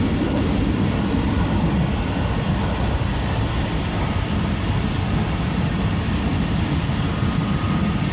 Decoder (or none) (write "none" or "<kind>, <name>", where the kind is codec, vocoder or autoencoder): none